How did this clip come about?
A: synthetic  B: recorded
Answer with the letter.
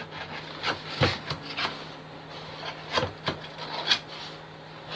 B